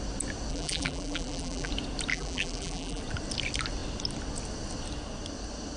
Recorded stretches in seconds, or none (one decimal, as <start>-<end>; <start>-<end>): 0.0-0.5; 1.7-2.1; 3.0-5.8